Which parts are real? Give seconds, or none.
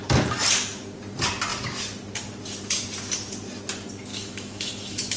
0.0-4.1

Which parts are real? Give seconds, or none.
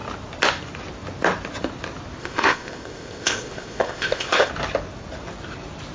0.0-2.2; 4.5-5.9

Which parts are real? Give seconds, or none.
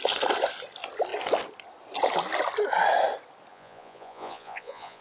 0.0-3.5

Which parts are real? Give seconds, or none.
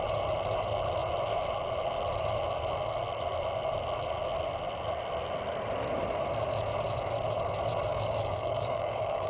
0.0-7.9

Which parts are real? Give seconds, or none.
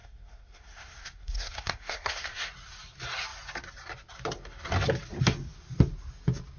2.5-6.6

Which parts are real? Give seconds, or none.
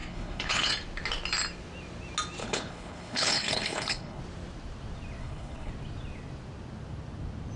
0.7-2.4; 4.2-5.2; 5.7-7.6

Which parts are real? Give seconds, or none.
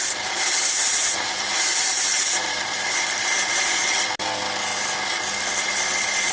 3.8-6.3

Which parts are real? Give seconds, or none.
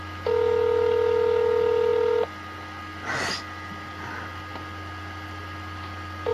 0.0-6.3